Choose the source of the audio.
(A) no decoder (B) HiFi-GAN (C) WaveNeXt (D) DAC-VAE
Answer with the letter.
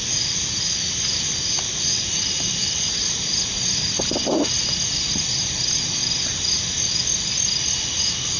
A